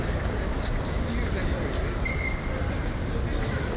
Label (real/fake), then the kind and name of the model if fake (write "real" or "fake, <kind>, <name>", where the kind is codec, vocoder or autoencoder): real